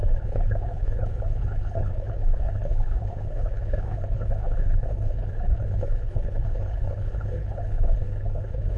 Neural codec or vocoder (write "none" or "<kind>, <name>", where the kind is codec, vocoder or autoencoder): codec, HILCodec